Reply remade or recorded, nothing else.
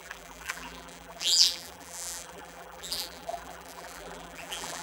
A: remade